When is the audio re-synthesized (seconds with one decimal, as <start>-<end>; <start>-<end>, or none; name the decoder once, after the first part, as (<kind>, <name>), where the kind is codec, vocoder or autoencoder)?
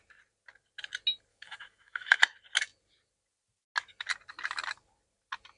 1.3-2.2 (autoencoder, DAC-VAE)